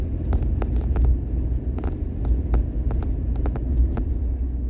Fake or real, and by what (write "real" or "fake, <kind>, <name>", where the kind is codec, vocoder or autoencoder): real